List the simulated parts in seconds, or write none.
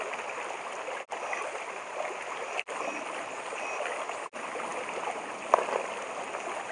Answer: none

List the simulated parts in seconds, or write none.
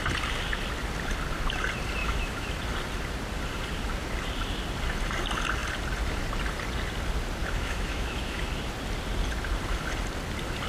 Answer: 2.0-2.5 (autoencoder, DAC-VAE); 7.4-8.4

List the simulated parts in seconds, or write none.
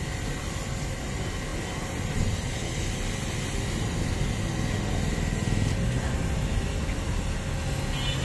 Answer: none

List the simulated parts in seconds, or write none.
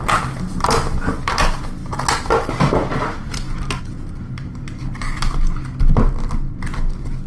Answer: none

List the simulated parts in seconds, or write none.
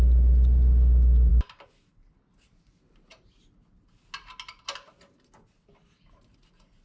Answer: none